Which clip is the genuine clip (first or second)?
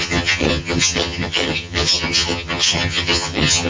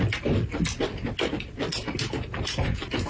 second